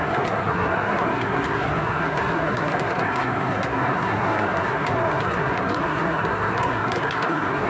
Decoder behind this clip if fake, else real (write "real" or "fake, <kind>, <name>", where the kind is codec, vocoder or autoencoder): fake, codec, SNAC